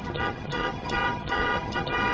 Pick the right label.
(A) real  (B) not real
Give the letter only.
B